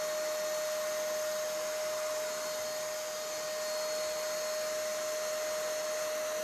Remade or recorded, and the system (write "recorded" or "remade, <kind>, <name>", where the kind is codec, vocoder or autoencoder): recorded